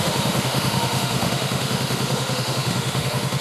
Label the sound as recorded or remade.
remade